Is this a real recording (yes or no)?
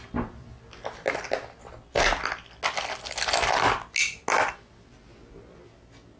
yes